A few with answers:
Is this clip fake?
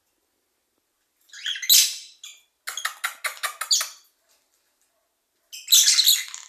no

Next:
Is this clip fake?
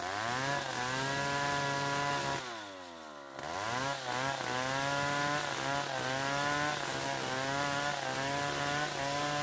no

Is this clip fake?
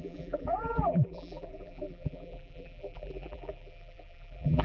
yes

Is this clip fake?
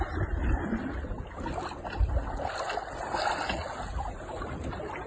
no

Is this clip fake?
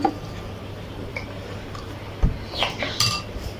no